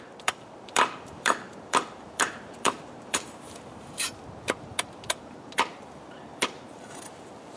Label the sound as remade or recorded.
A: remade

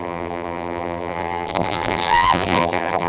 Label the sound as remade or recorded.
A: remade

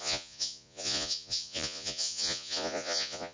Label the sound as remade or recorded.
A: remade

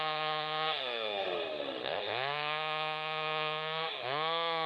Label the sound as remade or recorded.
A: remade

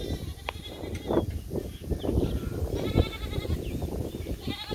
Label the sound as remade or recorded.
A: recorded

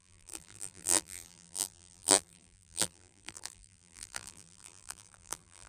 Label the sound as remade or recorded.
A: remade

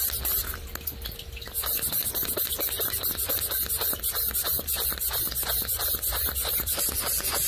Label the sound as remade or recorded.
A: recorded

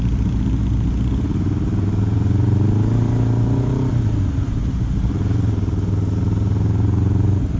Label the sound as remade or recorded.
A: recorded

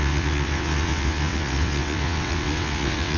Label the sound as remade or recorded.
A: remade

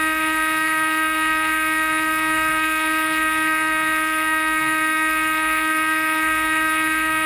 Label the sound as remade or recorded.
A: remade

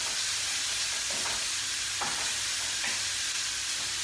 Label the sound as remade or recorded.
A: recorded